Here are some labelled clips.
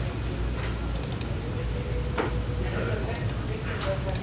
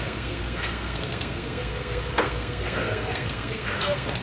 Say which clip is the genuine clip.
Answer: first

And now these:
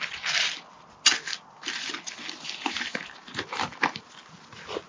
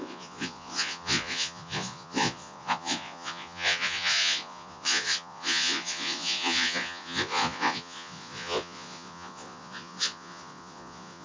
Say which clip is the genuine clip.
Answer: first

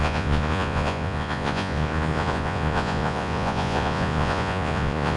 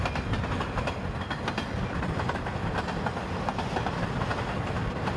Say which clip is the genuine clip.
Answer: second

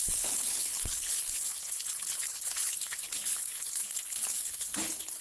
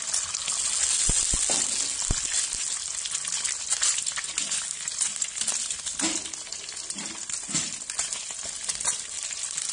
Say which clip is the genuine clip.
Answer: second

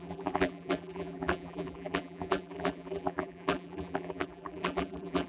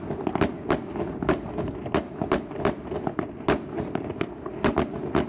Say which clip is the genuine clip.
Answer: second